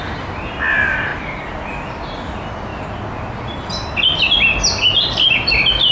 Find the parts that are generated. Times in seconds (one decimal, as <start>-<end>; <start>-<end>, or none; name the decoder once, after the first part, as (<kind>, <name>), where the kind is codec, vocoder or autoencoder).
none